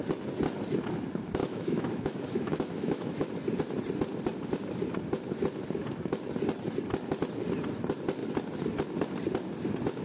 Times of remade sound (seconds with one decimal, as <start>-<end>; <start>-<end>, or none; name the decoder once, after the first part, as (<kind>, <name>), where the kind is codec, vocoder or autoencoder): 1.4-3.3 (autoencoder, DAC-VAE)